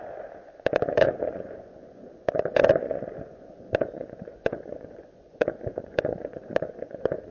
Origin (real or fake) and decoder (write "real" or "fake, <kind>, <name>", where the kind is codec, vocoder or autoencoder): fake, vocoder, Vocos